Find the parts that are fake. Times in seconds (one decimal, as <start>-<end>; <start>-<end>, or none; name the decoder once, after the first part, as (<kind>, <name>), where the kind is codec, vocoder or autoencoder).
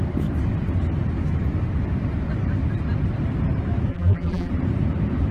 3.9-4.5 (vocoder, BigVGAN v2)